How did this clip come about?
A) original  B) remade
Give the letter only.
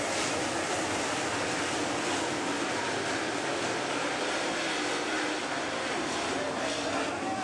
A